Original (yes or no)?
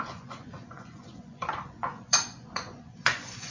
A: no